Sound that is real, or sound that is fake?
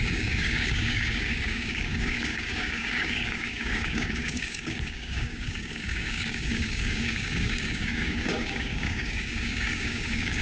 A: fake